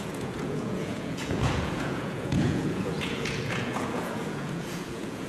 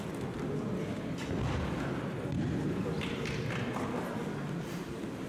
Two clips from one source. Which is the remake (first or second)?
first